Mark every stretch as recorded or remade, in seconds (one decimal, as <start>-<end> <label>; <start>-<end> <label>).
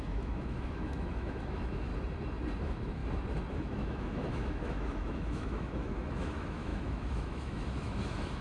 0.0-1.9 remade; 1.9-2.6 recorded; 2.6-3.0 remade; 3.0-3.5 recorded; 3.5-8.4 remade